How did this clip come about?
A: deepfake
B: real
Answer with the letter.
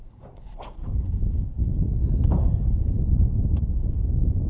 B